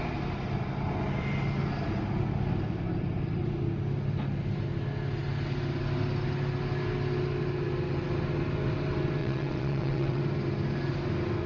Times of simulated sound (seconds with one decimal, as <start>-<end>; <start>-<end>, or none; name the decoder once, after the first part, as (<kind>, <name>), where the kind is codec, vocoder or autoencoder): 9.2-10.2 (vocoder, WaveNeXt)